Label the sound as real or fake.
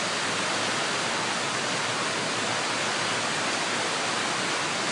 real